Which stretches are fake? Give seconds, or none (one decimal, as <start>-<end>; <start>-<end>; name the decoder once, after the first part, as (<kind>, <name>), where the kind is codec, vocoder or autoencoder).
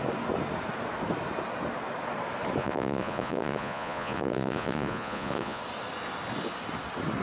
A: 2.6-5.6 (vocoder, Vocos)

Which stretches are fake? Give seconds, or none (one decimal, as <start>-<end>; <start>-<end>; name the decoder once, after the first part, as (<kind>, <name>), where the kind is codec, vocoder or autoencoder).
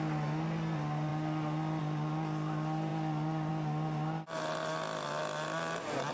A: none